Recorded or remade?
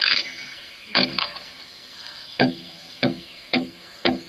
remade